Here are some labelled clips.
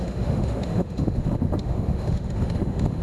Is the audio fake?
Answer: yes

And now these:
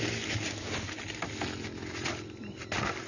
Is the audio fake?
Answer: no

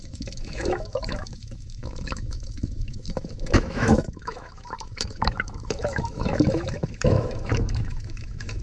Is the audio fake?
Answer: yes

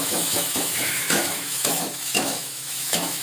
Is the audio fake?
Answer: yes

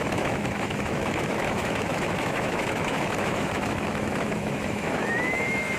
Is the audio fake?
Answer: yes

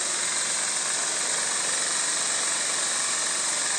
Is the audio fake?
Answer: no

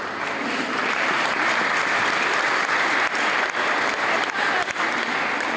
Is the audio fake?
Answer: no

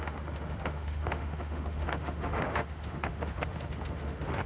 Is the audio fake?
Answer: yes